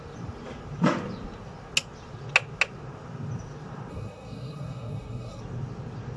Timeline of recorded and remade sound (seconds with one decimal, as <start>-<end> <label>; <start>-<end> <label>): 0.0-3.9 recorded; 3.9-5.4 remade; 5.4-6.2 recorded